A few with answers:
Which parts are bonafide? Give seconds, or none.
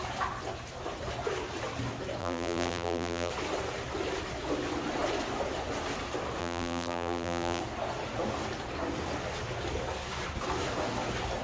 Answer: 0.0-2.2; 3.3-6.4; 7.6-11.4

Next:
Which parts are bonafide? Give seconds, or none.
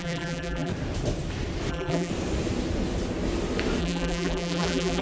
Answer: 0.7-1.7; 2.1-3.8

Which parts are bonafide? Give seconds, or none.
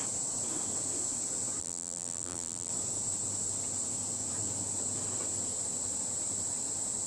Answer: 0.0-1.6; 2.7-7.1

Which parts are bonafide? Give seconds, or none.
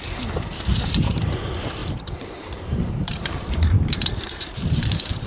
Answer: 0.0-0.7; 1.2-1.8